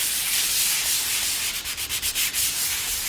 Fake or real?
fake